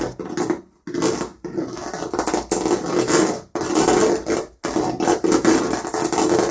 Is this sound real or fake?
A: real